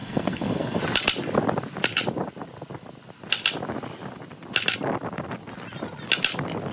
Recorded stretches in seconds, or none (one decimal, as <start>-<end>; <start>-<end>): 0.8-6.7